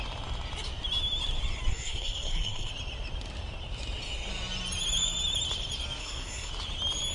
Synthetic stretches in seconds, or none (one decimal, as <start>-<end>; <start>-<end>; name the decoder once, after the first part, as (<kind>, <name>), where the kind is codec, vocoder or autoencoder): 1.7-2.7 (codec, SNAC); 6.0-6.5